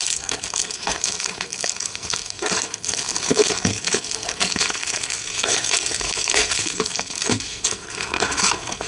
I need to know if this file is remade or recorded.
remade